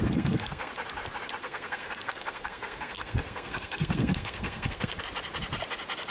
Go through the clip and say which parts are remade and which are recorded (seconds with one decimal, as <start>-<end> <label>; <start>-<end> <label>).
0.0-0.7 remade; 0.7-1.4 recorded; 1.4-5.0 remade; 5.0-6.1 recorded